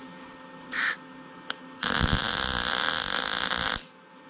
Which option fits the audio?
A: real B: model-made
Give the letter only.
A